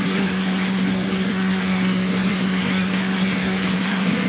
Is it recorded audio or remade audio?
remade